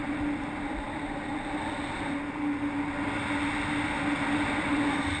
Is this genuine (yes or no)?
yes